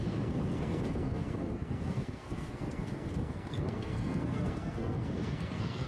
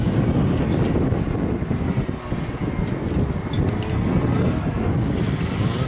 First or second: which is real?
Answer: second